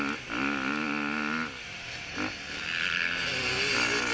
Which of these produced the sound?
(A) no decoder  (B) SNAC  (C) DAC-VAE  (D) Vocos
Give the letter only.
A